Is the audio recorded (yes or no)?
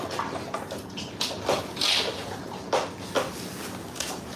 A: yes